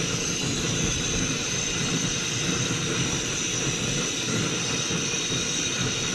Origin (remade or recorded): recorded